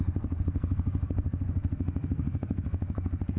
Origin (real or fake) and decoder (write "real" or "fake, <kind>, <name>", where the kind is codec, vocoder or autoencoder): fake, codec, SNAC